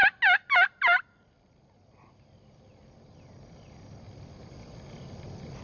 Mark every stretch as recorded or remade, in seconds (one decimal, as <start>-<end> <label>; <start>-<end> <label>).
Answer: 0.0-5.6 recorded